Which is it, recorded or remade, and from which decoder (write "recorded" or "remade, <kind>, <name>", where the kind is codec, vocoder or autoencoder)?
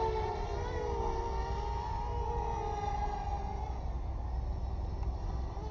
recorded